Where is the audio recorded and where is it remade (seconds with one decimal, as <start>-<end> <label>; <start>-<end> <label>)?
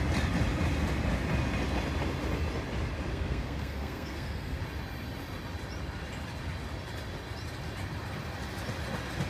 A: 0.0-3.1 recorded; 3.1-4.6 remade; 4.6-9.3 recorded